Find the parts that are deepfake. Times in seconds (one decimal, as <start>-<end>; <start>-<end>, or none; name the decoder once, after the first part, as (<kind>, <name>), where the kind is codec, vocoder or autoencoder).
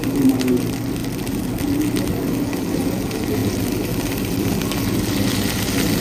none